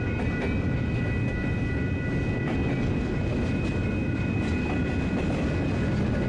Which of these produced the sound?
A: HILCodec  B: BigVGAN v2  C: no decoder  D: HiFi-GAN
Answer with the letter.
C